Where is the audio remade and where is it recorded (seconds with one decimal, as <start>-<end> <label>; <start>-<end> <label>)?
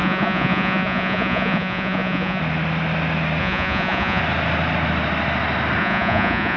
0.0-2.4 remade; 2.4-3.4 recorded; 3.4-4.2 remade; 4.2-5.8 recorded; 5.8-6.6 remade